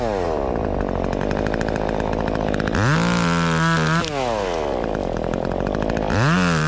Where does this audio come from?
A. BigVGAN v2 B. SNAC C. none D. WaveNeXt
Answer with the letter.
C